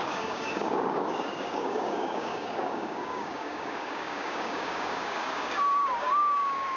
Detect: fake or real fake